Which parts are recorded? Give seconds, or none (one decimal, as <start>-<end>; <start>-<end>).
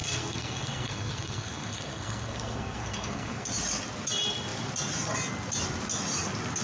3.5-6.6